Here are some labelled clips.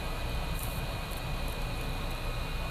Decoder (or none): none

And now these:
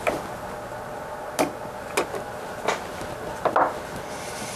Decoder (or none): none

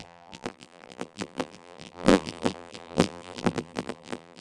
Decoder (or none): vocoder, BigVGAN v2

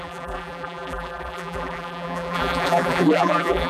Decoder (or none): vocoder, BigVGAN v2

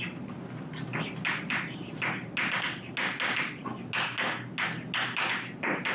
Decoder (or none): none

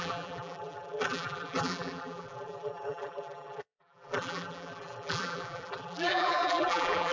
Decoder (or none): vocoder, BigVGAN v2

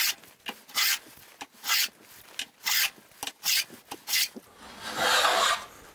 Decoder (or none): none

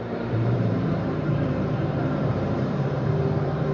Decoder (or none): vocoder, BigVGAN v2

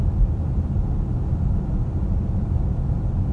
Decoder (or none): none